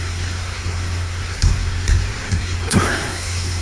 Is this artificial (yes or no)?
yes